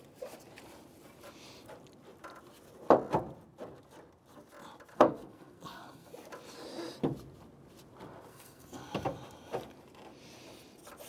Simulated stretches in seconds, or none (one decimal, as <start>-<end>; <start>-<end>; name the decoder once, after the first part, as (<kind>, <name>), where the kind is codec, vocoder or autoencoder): 4.9-6.1 (codec, SNAC); 8.3-8.9